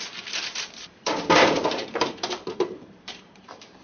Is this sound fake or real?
fake